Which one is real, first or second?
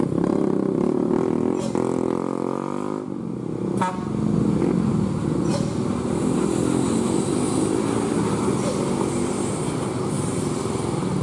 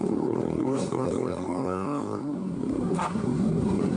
first